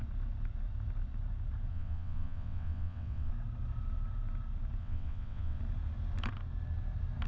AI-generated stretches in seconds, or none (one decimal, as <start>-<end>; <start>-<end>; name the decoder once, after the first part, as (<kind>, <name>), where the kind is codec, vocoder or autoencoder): 1.7-3.3 (vocoder, WaveNeXt); 4.8-5.6